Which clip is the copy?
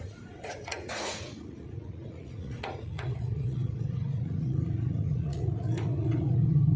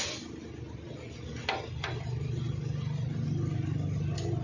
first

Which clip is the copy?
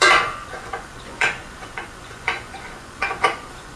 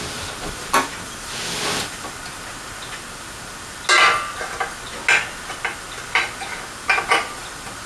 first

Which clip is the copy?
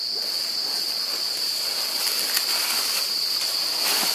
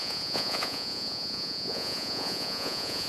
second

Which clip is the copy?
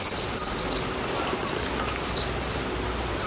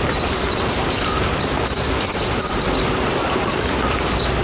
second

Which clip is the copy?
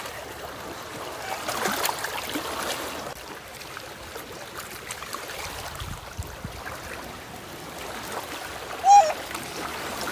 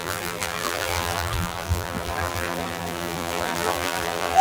second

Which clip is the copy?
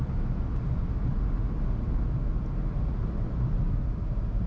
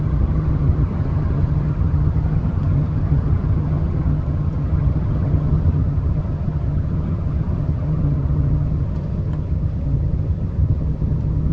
second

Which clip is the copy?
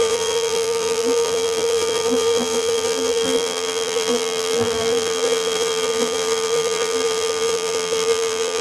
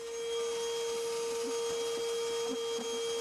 first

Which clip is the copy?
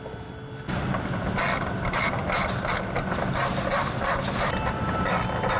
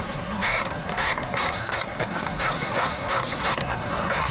second